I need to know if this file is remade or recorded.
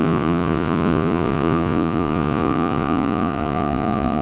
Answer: remade